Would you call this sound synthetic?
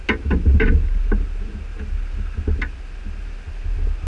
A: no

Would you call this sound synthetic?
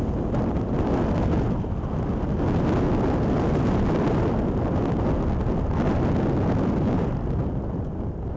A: no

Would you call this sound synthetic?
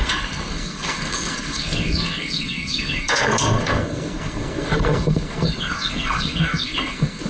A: yes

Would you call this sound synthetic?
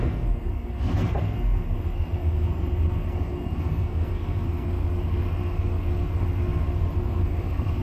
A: yes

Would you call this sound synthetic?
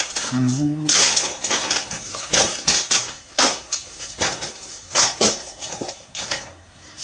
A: yes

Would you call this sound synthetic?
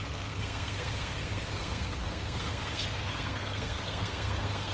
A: yes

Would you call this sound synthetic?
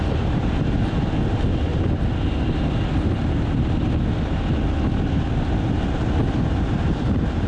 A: no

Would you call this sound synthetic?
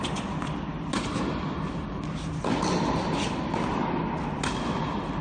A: no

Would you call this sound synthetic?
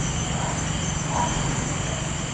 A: no